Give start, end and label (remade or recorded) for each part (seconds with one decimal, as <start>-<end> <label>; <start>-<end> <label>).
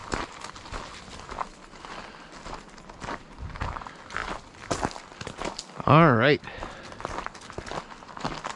0.0-8.6 recorded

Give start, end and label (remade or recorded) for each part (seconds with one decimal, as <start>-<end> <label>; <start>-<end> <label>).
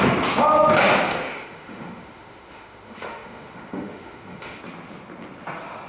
0.0-1.1 recorded; 1.1-4.6 remade; 4.6-5.9 recorded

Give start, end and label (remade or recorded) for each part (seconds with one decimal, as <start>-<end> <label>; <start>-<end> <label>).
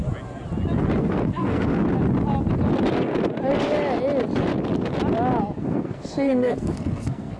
0.0-1.0 recorded; 1.0-1.8 remade; 1.8-5.6 recorded; 5.6-7.4 remade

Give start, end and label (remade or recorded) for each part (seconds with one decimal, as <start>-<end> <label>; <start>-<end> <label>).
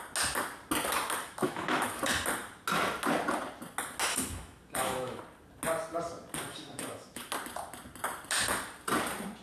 0.0-1.2 recorded; 1.2-2.0 remade; 2.0-4.1 recorded; 4.1-5.2 remade; 5.2-6.5 recorded; 6.5-7.3 remade; 7.3-9.4 recorded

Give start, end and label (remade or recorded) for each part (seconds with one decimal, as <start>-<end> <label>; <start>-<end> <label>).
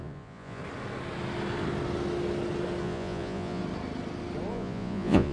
0.0-0.6 remade; 0.6-2.8 recorded; 2.8-3.6 remade; 3.6-4.5 recorded; 4.5-5.3 remade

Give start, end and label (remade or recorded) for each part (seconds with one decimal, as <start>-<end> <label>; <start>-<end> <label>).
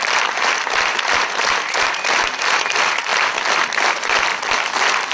0.0-5.1 recorded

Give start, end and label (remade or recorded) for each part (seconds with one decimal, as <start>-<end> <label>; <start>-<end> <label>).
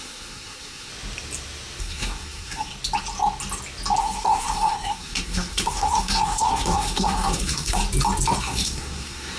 0.0-0.9 remade; 0.9-1.8 recorded; 1.8-2.7 remade; 2.7-4.0 recorded; 4.0-7.8 remade; 7.8-8.4 recorded; 8.4-9.4 remade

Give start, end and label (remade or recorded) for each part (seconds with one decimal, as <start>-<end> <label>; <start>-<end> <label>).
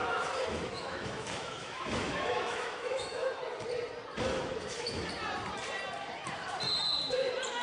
0.0-3.4 remade; 3.4-4.3 recorded; 4.3-5.1 remade; 5.1-7.6 recorded